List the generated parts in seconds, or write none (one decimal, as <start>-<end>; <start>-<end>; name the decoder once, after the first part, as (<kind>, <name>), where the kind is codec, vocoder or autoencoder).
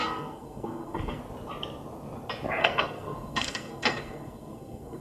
0.0-1.2 (codec, SNAC); 2.6-5.0